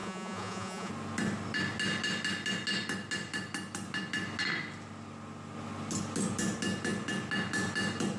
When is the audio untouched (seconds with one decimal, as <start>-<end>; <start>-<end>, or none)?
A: 0.9-8.2